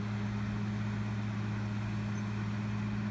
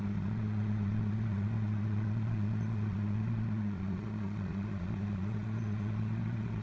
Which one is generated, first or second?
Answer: second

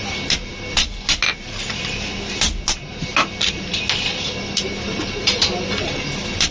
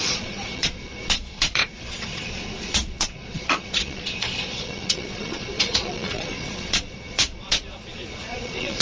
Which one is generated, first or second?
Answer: second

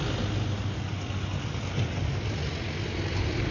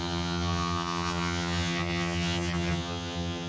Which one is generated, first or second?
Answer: second